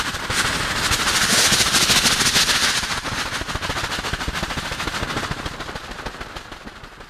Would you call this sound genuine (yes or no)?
yes